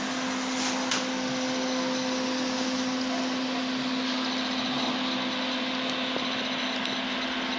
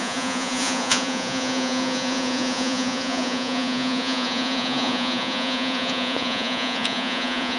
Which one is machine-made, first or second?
second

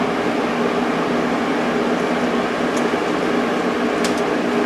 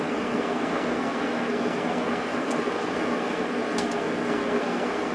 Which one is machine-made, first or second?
second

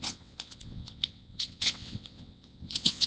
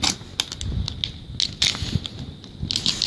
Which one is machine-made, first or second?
first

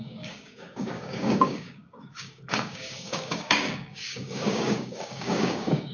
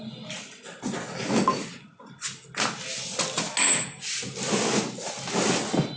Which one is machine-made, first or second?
first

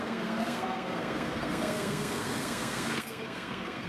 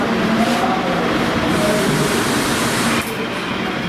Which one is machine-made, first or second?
first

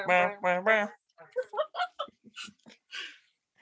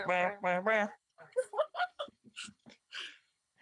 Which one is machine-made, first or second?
second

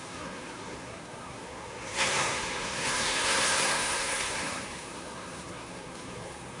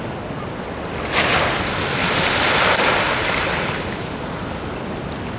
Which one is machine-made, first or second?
first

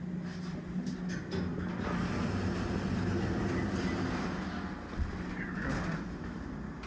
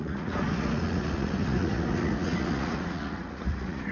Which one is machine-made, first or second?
second